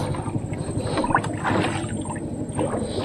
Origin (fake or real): real